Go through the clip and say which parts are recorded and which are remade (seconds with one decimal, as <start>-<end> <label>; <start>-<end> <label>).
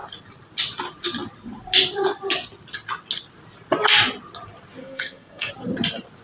0.0-4.8 recorded; 4.8-5.5 remade; 5.5-6.2 recorded